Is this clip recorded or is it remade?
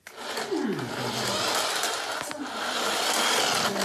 recorded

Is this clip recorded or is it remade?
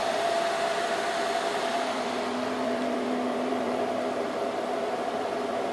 remade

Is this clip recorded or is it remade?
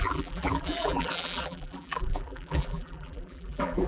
remade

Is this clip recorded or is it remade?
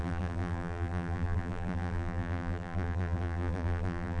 remade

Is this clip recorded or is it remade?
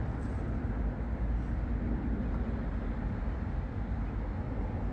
recorded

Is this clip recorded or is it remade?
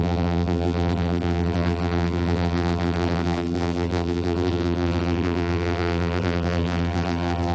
remade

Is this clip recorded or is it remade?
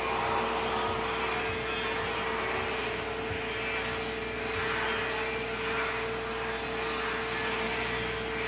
recorded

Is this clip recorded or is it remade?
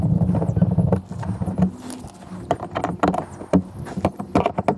recorded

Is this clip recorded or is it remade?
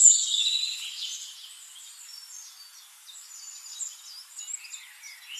recorded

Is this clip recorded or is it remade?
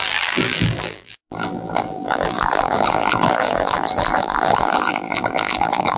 remade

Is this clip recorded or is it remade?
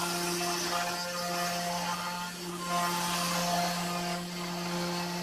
recorded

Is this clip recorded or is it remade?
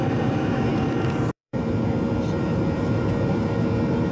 remade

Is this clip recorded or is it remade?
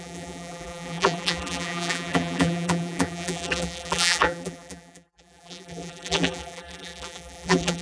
remade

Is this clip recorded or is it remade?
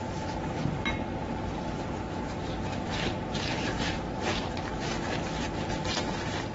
recorded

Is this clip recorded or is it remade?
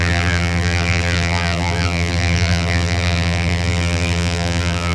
remade